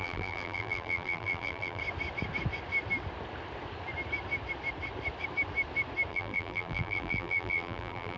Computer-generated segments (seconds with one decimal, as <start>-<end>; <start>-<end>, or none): 0.0-1.8; 6.1-8.2

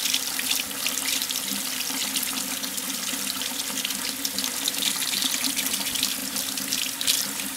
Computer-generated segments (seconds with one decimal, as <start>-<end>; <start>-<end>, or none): 0.0-2.0; 5.6-7.6